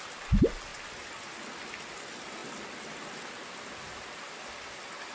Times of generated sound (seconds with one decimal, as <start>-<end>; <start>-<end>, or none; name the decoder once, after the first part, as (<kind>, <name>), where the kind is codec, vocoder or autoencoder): none